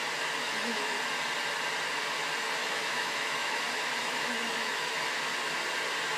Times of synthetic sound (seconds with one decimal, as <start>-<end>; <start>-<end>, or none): 0.4-1.0; 2.6-3.6; 4.0-4.9